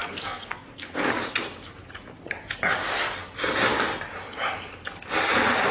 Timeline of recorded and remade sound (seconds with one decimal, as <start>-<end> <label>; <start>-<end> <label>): 0.0-1.1 remade; 1.1-5.7 recorded